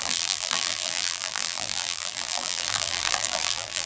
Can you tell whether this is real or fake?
fake